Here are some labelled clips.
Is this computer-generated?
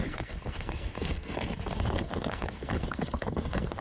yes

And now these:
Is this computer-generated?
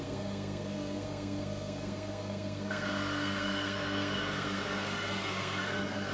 yes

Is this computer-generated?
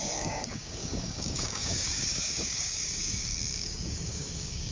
yes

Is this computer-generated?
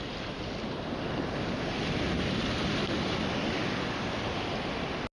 no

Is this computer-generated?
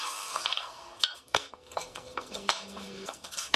yes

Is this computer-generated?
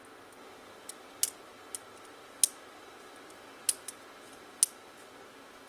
no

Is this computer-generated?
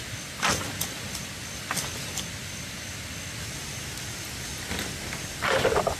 no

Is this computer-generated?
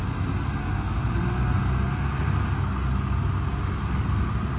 no